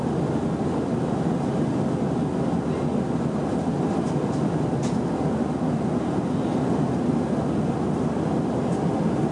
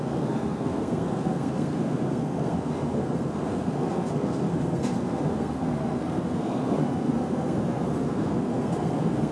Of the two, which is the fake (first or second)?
second